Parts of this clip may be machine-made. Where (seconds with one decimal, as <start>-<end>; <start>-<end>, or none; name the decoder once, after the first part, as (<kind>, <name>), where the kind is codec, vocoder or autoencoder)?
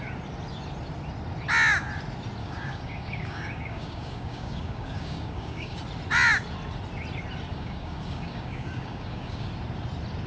2.4-5.8 (codec, DAC); 7.5-9.5